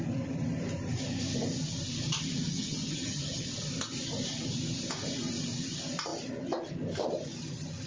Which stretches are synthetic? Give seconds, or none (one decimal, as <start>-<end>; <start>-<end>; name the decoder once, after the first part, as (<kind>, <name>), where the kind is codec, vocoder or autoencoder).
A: 2.5-3.5 (vocoder, HiFi-GAN)